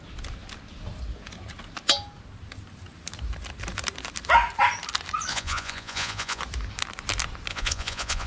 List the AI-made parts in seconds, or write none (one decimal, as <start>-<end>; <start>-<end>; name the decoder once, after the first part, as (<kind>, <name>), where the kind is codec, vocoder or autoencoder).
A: 5.3-6.4 (vocoder, Vocos); 7.5-8.3